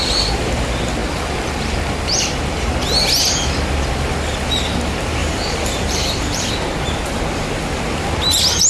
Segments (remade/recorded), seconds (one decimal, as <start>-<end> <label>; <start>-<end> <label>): 0.0-5.2 recorded; 5.2-6.5 remade; 6.5-8.7 recorded